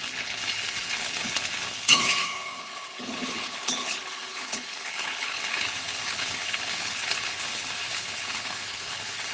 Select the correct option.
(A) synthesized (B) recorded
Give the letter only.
A